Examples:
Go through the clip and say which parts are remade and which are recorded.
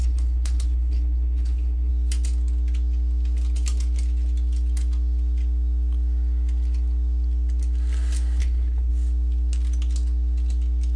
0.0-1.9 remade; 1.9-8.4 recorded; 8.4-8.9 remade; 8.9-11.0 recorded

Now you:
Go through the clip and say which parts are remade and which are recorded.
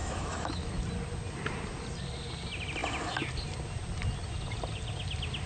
0.0-0.7 remade; 0.7-5.5 recorded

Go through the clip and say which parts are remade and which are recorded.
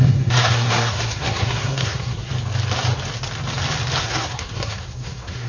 0.0-2.3 remade; 2.3-4.0 recorded; 4.0-5.5 remade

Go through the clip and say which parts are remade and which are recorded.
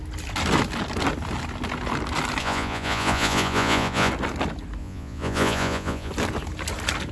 0.0-2.4 recorded; 2.4-4.1 remade; 4.1-4.8 recorded; 4.8-6.1 remade; 6.1-7.1 recorded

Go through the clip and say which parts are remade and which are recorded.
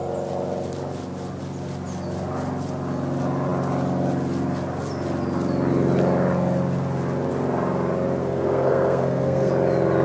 0.0-8.2 recorded; 8.2-9.5 remade; 9.5-10.0 recorded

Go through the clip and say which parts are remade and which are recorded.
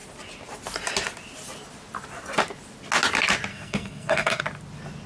0.0-3.5 recorded; 3.5-4.4 remade; 4.4-5.1 recorded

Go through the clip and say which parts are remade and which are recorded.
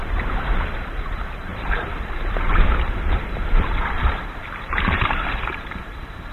0.0-6.3 remade